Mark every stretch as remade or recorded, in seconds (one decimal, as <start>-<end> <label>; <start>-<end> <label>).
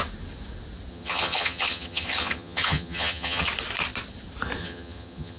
0.0-0.9 recorded; 0.9-3.5 remade; 3.5-4.6 recorded; 4.6-5.4 remade